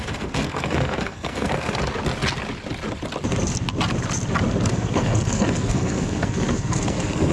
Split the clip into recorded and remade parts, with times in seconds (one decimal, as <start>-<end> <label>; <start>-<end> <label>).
0.0-1.8 remade; 1.8-4.7 recorded; 4.7-7.3 remade